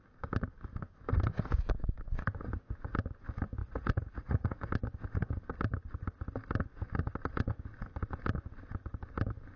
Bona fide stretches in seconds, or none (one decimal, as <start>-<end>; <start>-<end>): 0.0-3.6; 4.7-9.6